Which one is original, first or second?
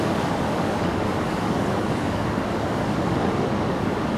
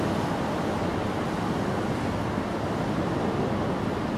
second